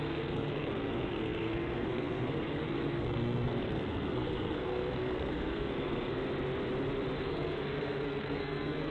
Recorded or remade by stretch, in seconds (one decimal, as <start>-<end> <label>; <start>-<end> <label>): 0.0-6.2 remade; 6.2-7.2 recorded; 7.2-8.9 remade